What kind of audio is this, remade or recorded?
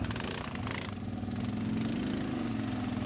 recorded